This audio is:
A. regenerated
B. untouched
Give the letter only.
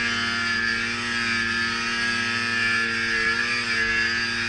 B